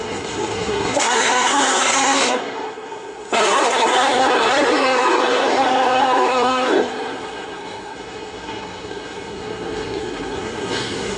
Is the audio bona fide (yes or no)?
no